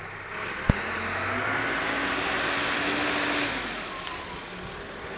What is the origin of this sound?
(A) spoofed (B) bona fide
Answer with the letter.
B